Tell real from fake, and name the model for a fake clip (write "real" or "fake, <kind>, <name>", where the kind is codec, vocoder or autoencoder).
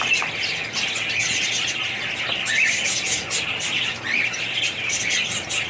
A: real